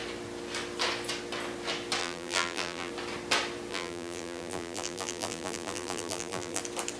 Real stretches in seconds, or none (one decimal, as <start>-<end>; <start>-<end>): 0.0-2.0; 2.9-3.7; 6.6-7.0